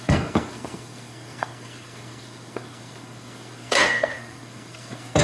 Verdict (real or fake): fake